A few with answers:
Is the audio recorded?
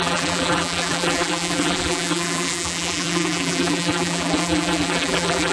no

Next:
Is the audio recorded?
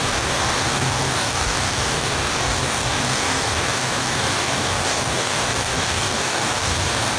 no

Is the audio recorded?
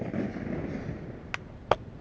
yes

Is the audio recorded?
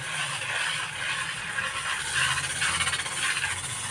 yes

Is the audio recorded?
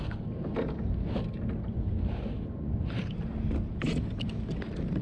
yes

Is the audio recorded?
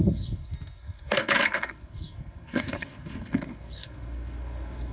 no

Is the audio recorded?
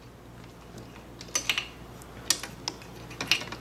yes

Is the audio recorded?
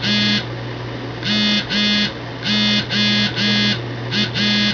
yes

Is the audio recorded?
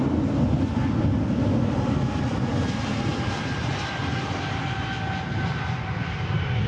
yes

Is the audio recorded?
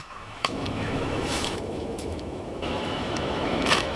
no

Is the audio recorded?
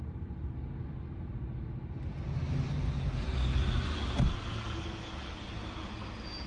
yes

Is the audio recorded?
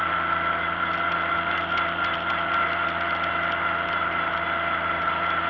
yes